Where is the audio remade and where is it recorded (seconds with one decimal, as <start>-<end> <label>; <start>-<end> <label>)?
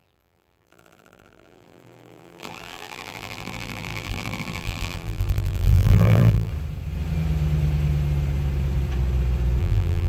0.0-6.5 remade; 6.5-9.6 recorded; 9.6-10.1 remade